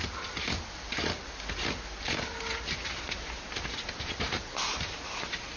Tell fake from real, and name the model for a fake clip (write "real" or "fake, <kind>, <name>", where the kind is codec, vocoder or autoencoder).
real